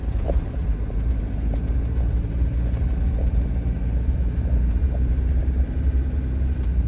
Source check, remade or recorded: remade